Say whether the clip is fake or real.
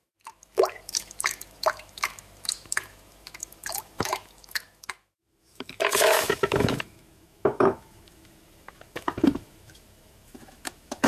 fake